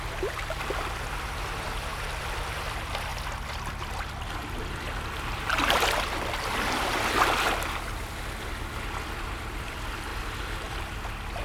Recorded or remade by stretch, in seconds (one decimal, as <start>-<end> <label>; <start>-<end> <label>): 0.0-11.4 recorded